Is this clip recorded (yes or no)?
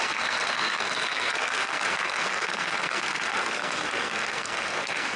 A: no